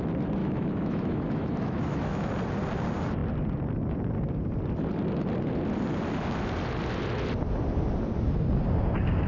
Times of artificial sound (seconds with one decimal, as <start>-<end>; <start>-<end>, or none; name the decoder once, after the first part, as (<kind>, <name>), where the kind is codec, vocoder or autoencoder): 0.4-2.3 (autoencoder, DAC-VAE)